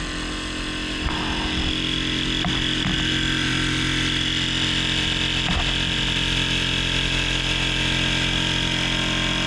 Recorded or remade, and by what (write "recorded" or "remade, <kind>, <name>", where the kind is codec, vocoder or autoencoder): recorded